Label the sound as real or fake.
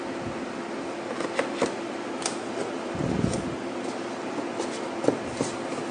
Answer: real